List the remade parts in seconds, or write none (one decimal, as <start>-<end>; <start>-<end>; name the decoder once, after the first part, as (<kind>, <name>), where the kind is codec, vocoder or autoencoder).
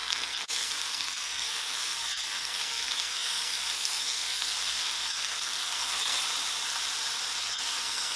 0.0-6.2 (codec, SNAC); 7.4-8.2